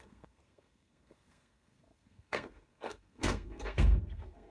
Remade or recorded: remade